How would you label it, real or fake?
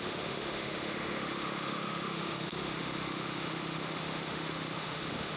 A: fake